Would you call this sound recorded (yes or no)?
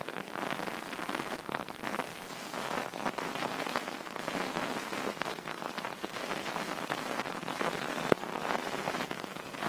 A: no